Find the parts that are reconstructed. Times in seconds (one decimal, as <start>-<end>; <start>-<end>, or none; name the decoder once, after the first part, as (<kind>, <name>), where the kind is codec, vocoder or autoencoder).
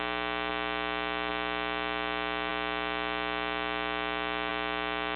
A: none